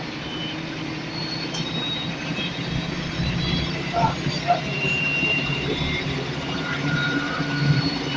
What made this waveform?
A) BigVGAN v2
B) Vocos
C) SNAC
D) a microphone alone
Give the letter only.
A